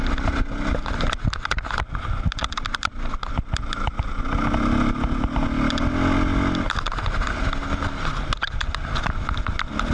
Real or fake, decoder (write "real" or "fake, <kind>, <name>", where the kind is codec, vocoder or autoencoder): real